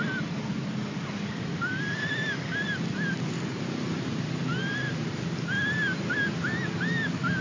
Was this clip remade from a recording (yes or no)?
no